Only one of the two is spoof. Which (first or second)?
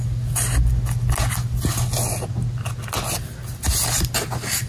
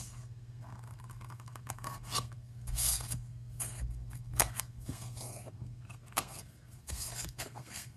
second